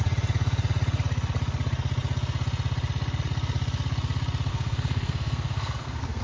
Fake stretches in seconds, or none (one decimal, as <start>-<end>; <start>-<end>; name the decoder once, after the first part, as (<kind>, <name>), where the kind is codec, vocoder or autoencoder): 4.5-6.2 (codec, SNAC)